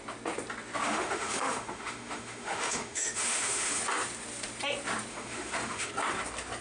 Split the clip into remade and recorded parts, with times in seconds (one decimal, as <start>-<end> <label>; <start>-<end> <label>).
0.0-0.8 recorded; 0.8-3.8 remade; 3.8-5.1 recorded; 5.1-5.9 remade; 5.9-6.6 recorded